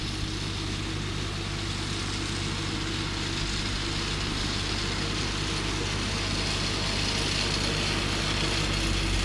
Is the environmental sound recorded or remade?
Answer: recorded